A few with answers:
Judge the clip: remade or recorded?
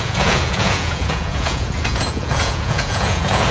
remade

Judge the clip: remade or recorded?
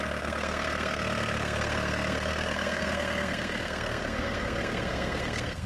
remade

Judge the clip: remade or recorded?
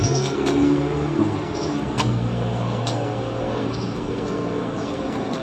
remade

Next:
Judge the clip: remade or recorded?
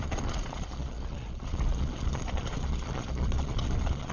remade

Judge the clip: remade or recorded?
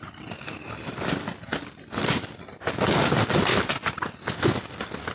recorded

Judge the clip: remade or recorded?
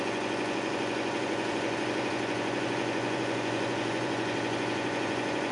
remade